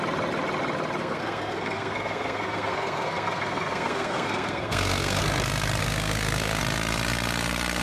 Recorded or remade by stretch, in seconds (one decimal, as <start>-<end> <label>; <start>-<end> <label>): 0.0-1.0 recorded; 1.0-5.2 remade; 5.2-5.8 recorded; 5.8-6.6 remade; 6.6-7.8 recorded